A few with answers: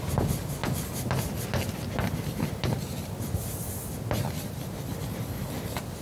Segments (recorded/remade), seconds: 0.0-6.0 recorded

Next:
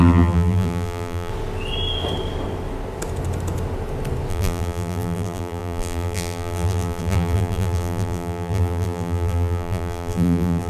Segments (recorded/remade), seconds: 0.0-1.3 remade; 1.3-4.3 recorded; 4.3-10.7 remade

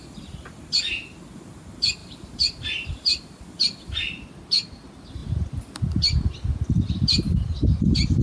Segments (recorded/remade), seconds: 0.0-2.0 recorded; 2.0-3.2 remade; 3.2-8.2 recorded

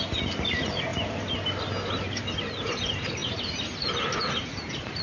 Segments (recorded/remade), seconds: 0.0-5.0 recorded

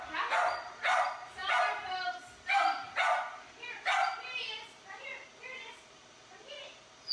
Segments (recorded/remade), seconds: 0.0-7.1 recorded

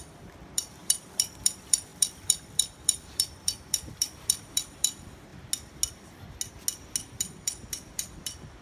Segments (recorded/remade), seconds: 0.0-5.3 remade; 5.3-7.1 recorded; 7.1-8.6 remade

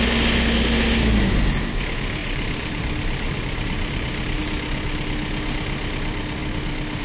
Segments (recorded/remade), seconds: 0.0-2.2 recorded; 2.2-4.4 remade; 4.4-7.0 recorded